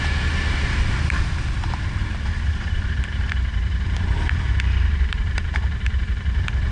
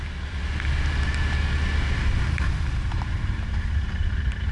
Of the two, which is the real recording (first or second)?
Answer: second